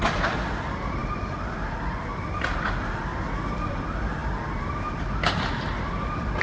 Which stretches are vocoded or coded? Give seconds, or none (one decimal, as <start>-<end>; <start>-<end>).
none

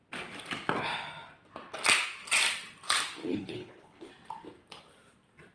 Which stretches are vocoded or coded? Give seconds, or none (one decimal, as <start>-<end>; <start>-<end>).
3.2-4.1

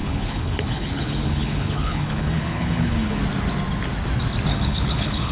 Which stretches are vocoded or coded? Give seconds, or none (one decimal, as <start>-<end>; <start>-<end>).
0.0-3.2; 4.5-5.3

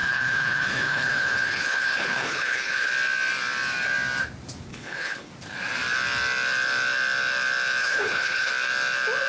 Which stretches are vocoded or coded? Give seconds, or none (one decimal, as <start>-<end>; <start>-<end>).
0.0-2.9; 4.7-5.3; 7.8-8.5